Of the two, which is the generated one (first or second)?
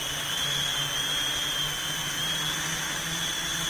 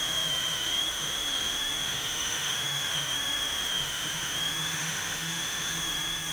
second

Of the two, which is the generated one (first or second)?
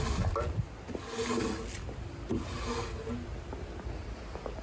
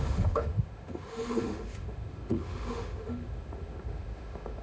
second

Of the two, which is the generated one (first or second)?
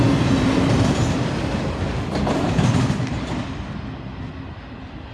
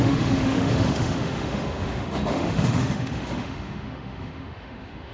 second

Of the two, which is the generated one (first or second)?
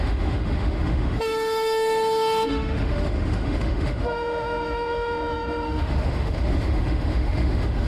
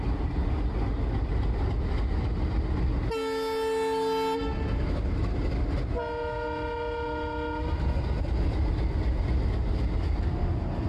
first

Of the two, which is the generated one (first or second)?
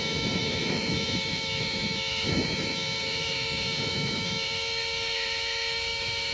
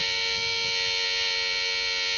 first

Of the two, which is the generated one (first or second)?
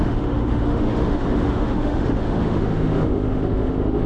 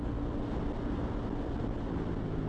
first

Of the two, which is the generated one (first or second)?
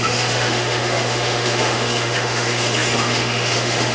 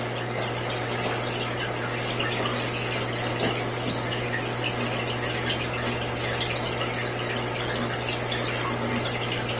first